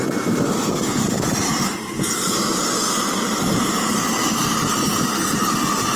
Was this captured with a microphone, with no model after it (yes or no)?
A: no